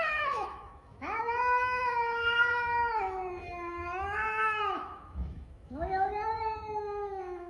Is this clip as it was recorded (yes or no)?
no